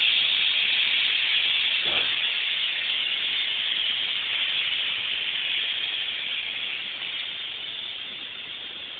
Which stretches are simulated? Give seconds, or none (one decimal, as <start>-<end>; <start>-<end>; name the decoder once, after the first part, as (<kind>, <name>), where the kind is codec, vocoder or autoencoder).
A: 1.9-3.2 (codec, DAC); 6.3-7.1

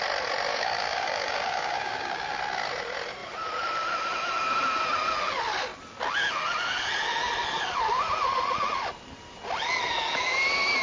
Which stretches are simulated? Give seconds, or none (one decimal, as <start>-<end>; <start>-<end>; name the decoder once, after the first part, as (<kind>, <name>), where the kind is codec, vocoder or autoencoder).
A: 0.5-2.4 (codec, DAC)

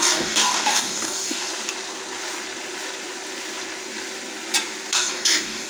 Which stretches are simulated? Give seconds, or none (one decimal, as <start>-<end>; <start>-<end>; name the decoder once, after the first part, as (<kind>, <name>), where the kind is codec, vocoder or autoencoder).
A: 0.0-1.5 (codec, DAC); 4.9-5.7

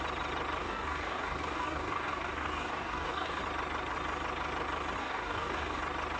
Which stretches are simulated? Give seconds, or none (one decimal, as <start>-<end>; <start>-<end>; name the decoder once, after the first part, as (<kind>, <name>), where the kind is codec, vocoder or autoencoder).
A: 0.6-3.4 (codec, DAC); 5.0-5.8

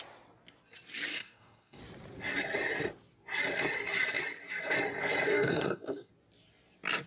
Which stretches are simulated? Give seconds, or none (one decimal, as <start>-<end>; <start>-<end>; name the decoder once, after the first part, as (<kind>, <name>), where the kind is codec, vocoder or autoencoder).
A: 1.1-1.8 (codec, DAC); 5.3-6.1

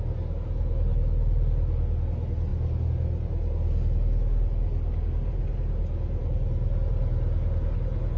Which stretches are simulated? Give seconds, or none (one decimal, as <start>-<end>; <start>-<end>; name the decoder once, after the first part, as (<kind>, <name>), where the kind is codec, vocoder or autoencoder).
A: none

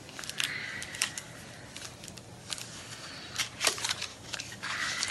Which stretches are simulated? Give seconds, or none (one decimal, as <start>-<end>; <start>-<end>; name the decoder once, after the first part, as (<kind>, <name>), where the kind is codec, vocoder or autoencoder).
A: 0.6-1.3 (codec, DAC); 2.4-3.1; 4.1-5.1

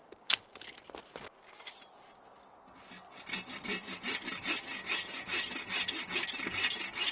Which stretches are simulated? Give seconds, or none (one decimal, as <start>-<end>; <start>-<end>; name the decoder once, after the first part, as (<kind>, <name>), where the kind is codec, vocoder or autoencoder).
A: none